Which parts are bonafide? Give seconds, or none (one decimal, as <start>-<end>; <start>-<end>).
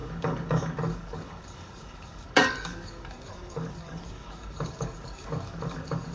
none